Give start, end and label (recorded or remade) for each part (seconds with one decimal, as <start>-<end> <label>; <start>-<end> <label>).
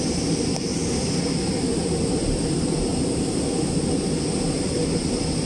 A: 0.0-5.5 recorded